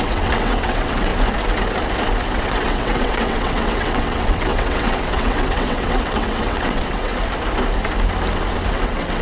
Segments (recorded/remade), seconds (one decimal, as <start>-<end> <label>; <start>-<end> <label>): 0.0-1.1 remade; 1.1-2.4 recorded; 2.4-7.1 remade; 7.1-8.7 recorded; 8.7-9.2 remade